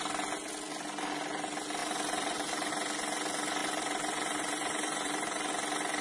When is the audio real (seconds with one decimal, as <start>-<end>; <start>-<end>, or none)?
0.0-1.8; 2.7-3.6; 5.5-6.0

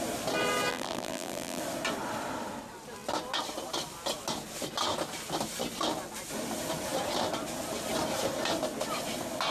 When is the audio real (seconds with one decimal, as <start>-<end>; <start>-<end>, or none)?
0.0-0.7; 1.6-9.5

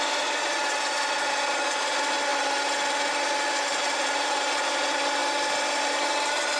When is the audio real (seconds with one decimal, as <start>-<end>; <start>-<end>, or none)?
0.0-3.7; 4.5-6.6

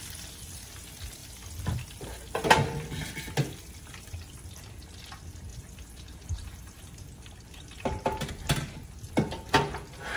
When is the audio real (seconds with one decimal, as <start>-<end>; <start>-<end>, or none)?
0.0-5.5; 8.3-10.2

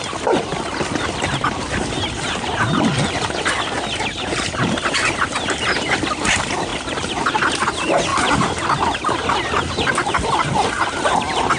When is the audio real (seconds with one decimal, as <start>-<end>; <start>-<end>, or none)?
0.0-6.7; 7.3-11.6